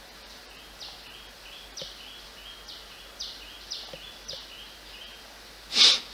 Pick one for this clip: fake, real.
real